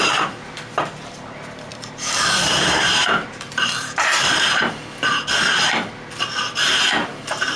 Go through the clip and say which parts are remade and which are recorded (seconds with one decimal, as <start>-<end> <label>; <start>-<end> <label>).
0.0-1.7 recorded; 1.7-4.7 remade; 4.7-7.6 recorded